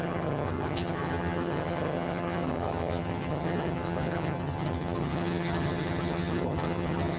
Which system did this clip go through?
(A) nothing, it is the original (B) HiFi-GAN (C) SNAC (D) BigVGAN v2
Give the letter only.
B